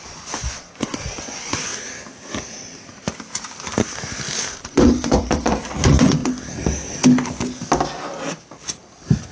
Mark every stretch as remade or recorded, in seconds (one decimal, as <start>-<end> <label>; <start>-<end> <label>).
0.0-1.7 remade; 1.7-4.5 recorded; 4.5-6.2 remade; 6.2-9.3 recorded